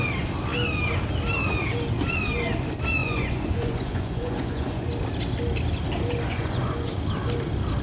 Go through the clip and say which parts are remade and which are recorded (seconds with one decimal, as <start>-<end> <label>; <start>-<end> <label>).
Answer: 0.0-3.0 recorded; 3.0-4.9 remade; 4.9-6.3 recorded; 6.3-6.9 remade; 6.9-7.8 recorded